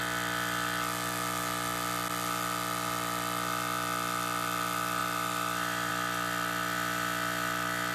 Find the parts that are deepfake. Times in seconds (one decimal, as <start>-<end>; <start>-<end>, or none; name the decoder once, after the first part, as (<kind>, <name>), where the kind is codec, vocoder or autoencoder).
5.0-5.9 (vocoder, BigVGAN v2)